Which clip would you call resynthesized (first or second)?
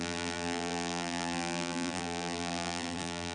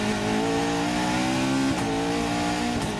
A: first